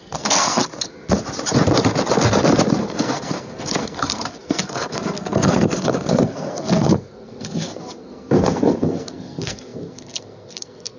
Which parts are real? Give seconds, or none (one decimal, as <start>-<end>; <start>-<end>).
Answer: 0.6-2.8

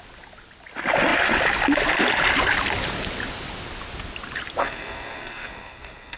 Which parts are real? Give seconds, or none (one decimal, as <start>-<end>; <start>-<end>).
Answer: 0.0-4.6